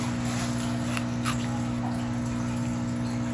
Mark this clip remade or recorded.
recorded